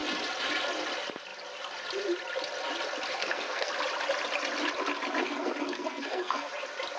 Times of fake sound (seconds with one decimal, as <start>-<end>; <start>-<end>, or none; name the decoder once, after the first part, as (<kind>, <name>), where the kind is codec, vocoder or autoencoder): 3.2-3.7 (codec, SNAC); 5.2-6.5